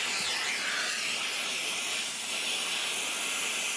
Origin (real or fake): real